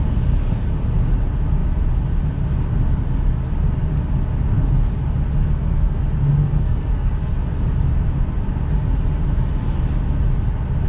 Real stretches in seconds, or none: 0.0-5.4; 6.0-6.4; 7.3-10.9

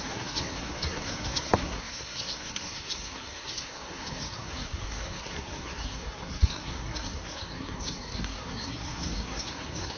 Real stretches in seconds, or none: none

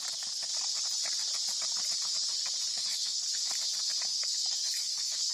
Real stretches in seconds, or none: 0.0-2.7; 3.5-4.1